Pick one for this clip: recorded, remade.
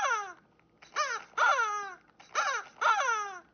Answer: recorded